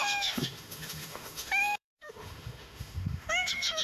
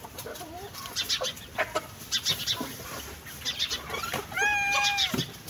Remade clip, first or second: first